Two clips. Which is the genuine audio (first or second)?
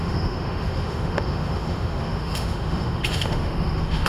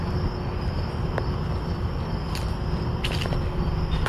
second